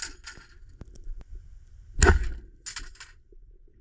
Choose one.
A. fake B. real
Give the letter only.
B